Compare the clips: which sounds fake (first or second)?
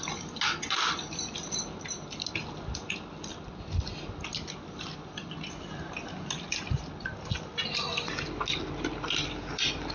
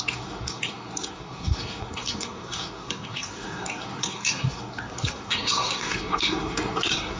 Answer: second